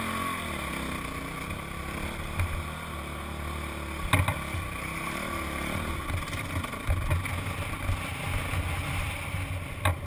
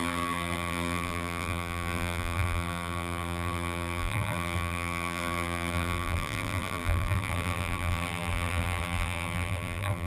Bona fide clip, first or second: first